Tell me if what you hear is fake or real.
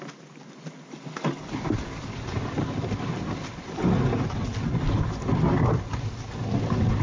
real